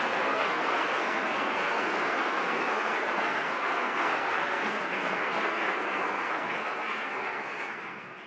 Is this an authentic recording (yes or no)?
no